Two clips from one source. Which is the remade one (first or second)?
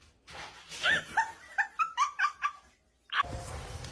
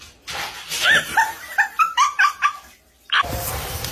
second